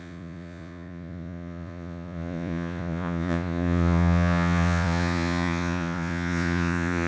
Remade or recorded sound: remade